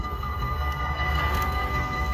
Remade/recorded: remade